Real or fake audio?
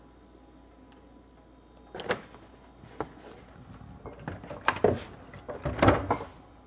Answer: real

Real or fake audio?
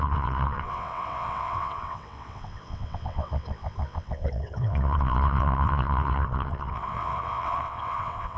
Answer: fake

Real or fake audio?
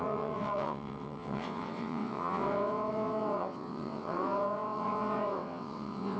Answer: fake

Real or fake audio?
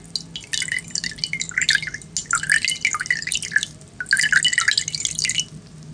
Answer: real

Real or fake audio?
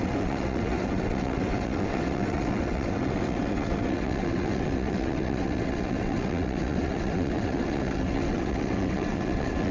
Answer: fake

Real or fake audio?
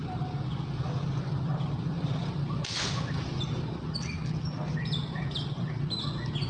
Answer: real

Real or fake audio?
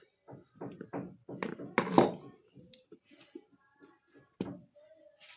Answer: real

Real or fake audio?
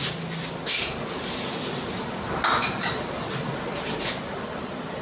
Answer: real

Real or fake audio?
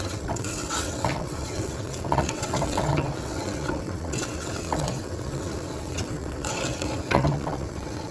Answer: fake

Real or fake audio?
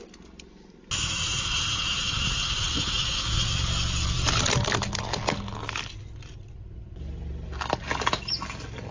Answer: real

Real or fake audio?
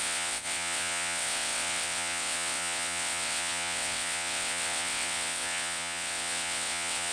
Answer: fake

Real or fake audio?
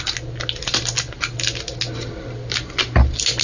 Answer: real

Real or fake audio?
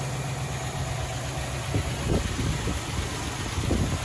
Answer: real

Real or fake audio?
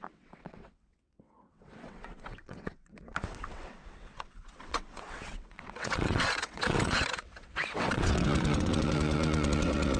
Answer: fake